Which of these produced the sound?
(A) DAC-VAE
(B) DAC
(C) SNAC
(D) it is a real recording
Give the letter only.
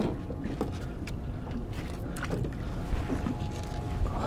D